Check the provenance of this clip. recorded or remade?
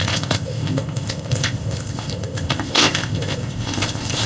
remade